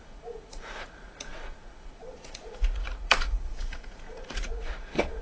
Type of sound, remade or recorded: remade